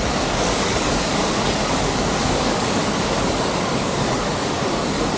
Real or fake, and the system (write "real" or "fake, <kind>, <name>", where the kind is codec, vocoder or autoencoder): fake, codec, DAC